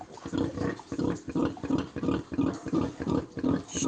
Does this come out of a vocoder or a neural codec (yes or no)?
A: yes